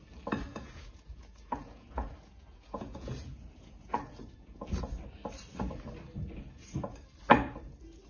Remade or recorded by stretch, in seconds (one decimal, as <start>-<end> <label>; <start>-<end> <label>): 0.0-0.5 recorded; 0.5-4.7 remade; 4.7-8.1 recorded